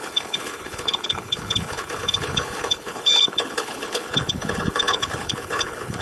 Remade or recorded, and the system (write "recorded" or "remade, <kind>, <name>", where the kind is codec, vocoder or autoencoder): remade, codec, HILCodec